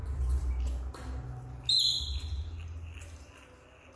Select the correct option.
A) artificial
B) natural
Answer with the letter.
B